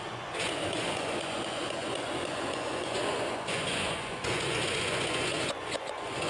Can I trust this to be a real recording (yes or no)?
no